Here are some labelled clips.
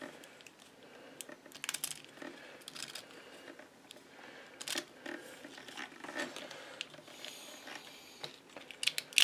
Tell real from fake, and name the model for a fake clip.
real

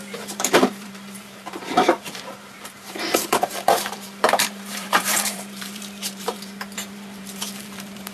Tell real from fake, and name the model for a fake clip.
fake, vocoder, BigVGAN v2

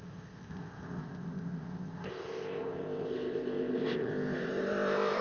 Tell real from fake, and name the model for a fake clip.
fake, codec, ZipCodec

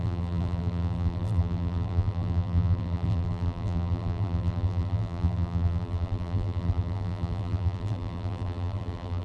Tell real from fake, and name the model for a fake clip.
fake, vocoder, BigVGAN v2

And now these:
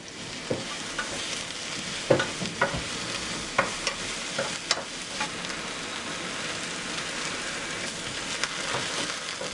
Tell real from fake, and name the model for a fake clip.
real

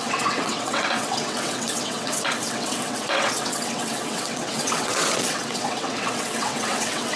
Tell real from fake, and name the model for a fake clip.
fake, vocoder, WaveNeXt